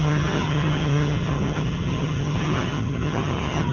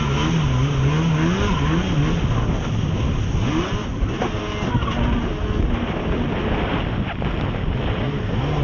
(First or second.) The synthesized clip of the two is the first